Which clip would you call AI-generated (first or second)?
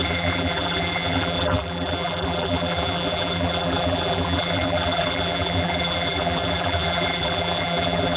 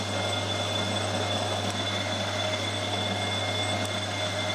first